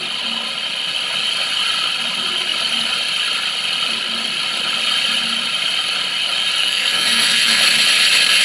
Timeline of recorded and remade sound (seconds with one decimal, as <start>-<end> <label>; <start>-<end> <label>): 0.0-6.6 recorded; 6.6-7.6 remade; 7.6-8.4 recorded